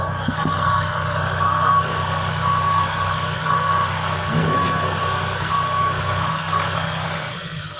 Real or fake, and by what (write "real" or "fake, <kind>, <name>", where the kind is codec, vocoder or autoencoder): fake, codec, SNAC